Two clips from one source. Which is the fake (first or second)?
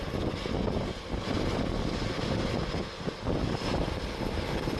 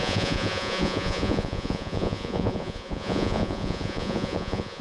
second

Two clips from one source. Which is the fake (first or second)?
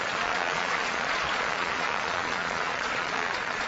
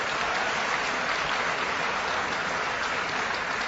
first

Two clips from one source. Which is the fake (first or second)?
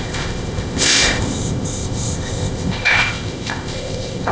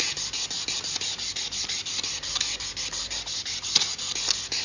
first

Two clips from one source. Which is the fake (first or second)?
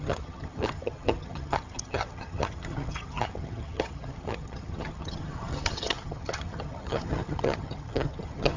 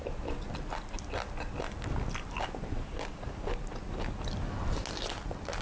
first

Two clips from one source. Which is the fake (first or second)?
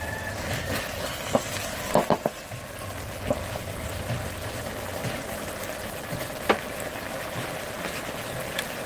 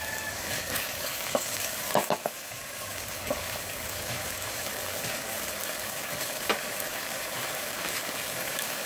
second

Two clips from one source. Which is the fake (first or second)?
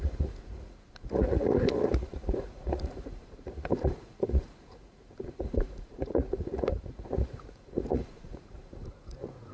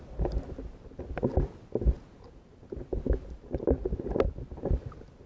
first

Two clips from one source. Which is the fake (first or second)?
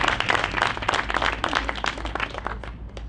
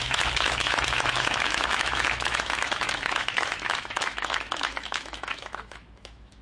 second